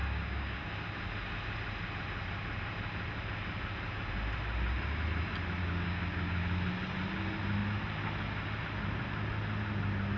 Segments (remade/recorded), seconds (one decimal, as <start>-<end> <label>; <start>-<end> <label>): 0.0-0.7 remade; 0.7-5.6 recorded; 5.6-6.4 remade; 6.4-10.2 recorded